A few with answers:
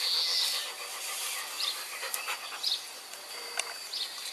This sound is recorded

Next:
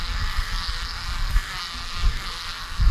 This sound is remade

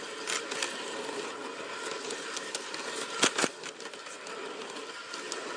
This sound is recorded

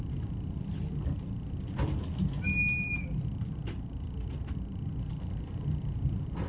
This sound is recorded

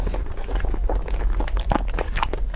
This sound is recorded